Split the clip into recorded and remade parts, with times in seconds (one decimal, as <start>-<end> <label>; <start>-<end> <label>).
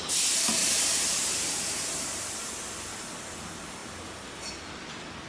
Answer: 0.0-0.6 recorded; 0.6-2.5 remade; 2.5-5.3 recorded